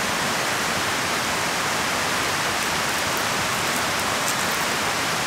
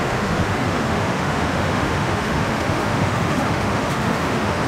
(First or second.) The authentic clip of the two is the first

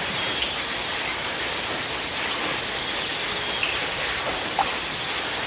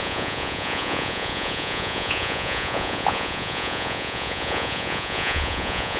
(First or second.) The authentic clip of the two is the first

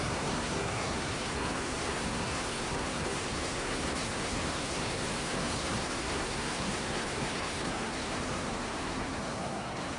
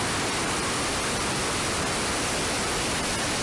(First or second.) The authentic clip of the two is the second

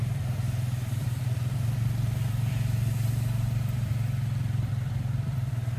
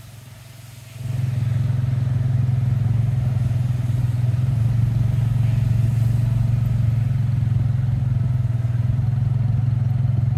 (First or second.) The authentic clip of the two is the second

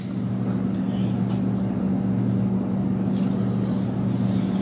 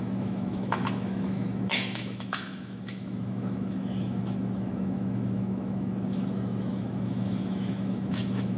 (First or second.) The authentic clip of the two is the first